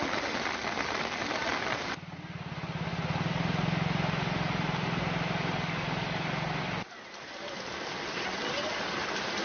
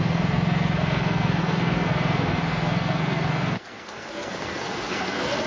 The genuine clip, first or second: first